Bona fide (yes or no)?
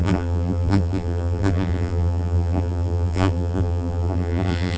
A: no